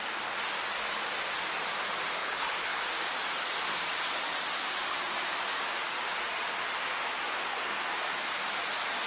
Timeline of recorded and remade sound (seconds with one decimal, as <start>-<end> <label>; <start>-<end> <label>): 0.0-2.2 recorded; 2.2-2.7 remade; 2.7-9.1 recorded